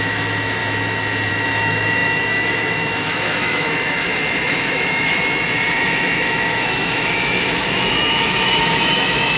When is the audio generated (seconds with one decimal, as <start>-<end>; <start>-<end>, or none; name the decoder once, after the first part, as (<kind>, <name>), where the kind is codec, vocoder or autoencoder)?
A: 0.0-0.6 (autoencoder, DAC-VAE); 1.3-9.4